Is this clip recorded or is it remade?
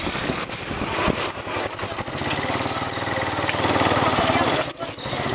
recorded